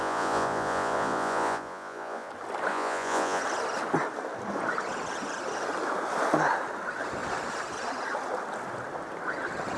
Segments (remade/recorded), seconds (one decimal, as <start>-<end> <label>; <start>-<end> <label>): 0.0-2.3 remade; 2.3-2.7 recorded; 2.7-3.4 remade; 3.4-9.8 recorded